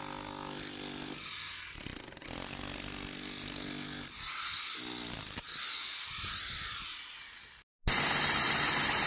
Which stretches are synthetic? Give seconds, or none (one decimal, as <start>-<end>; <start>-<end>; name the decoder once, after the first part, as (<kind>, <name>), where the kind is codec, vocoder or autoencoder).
none